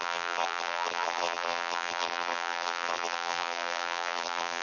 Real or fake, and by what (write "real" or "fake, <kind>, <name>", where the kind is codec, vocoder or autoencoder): fake, vocoder, BigVGAN v2